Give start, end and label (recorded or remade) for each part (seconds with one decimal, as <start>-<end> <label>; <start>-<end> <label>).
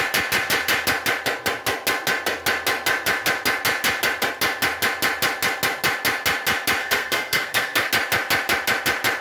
0.0-6.8 recorded; 6.8-7.9 remade; 7.9-9.2 recorded